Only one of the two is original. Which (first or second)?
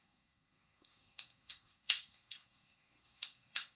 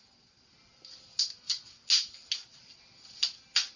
second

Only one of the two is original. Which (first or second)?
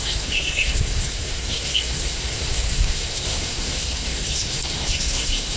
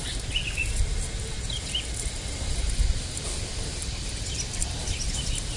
second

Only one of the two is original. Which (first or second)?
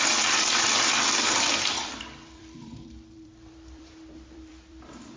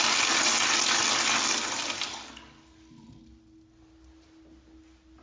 second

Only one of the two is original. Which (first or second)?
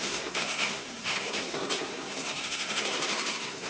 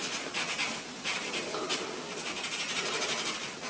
second